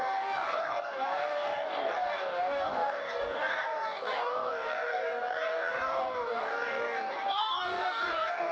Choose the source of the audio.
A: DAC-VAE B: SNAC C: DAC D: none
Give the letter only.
C